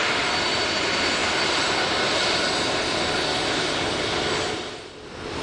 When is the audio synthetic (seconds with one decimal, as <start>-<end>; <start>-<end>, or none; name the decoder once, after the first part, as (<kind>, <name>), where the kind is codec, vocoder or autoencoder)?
none